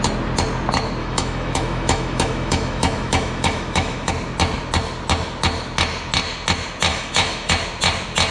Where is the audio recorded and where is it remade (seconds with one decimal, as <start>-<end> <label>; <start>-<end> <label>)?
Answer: 0.0-1.0 recorded; 1.0-4.1 remade; 4.1-6.9 recorded; 6.9-7.5 remade; 7.5-8.3 recorded